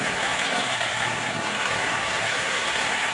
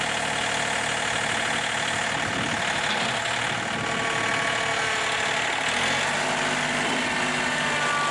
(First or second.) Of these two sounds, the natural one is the second